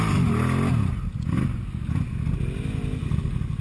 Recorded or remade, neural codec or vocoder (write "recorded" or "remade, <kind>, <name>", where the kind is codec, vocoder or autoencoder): recorded